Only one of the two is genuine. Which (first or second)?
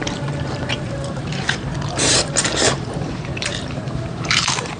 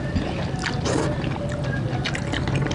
second